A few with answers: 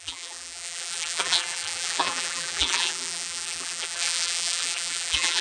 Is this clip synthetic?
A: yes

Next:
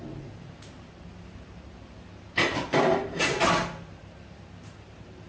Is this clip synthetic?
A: yes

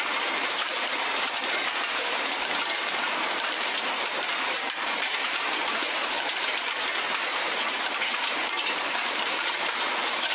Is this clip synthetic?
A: yes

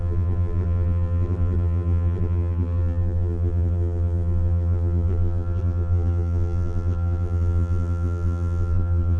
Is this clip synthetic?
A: yes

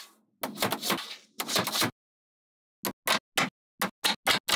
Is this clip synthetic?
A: no